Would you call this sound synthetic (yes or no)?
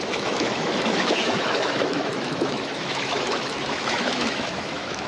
yes